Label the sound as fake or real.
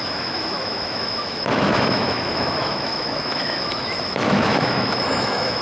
fake